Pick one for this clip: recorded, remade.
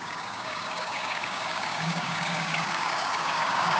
remade